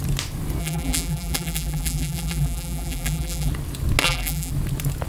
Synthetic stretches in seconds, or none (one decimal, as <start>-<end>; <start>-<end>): 0.6-3.5; 4.0-4.5

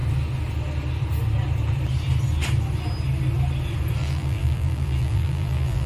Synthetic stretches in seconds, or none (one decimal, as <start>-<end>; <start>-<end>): 4.0-5.9

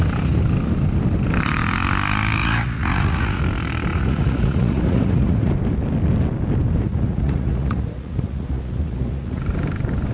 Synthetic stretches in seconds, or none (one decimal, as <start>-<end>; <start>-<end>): 2.4-3.4; 3.9-5.5; 6.8-9.4

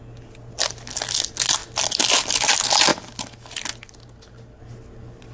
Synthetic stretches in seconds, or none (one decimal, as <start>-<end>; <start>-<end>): none

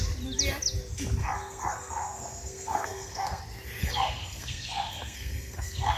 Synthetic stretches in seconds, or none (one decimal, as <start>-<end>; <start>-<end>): 1.2-3.4; 3.8-6.0

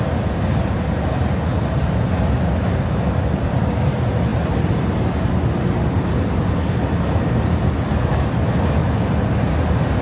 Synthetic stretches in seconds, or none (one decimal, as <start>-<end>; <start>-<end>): none